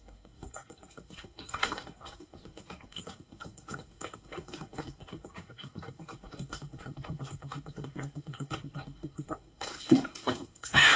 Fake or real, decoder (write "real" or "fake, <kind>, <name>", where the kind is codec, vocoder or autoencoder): fake, codec, SNAC